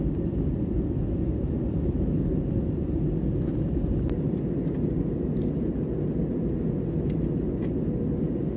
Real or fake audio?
real